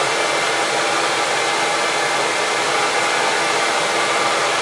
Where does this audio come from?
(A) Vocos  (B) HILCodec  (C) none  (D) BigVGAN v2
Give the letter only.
C